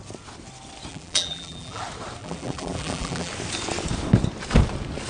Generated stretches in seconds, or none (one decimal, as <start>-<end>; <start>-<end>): 0.9-1.8; 2.2-3.3